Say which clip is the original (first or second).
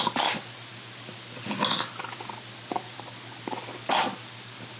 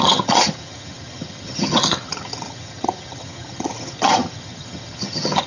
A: first